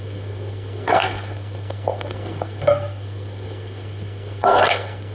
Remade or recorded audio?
remade